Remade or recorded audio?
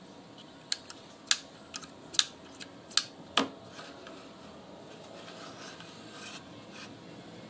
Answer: recorded